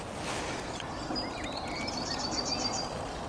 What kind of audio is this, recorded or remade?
remade